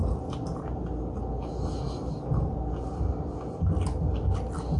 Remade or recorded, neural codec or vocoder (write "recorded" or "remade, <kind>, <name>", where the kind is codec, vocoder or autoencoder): recorded